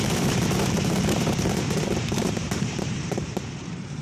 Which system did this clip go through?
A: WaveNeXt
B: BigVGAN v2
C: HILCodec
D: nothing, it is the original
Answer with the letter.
B